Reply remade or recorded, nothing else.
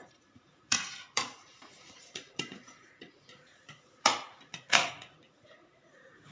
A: remade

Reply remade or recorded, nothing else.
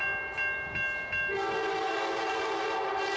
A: recorded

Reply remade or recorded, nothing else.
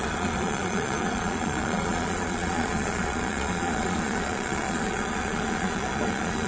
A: remade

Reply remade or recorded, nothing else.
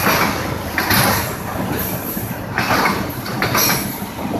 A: recorded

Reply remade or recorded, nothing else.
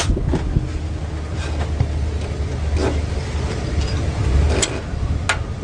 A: recorded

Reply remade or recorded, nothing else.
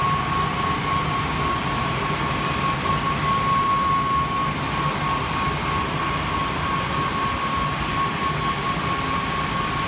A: recorded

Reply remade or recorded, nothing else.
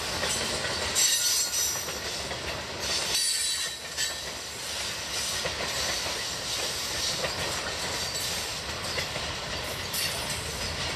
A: recorded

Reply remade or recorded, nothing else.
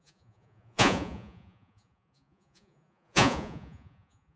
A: remade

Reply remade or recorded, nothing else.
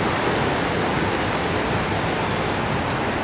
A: recorded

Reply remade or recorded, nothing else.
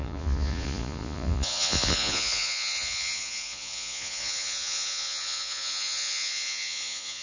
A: remade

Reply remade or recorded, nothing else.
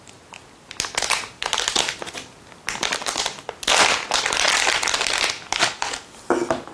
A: recorded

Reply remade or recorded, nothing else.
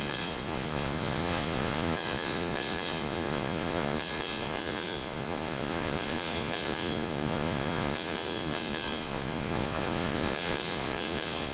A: remade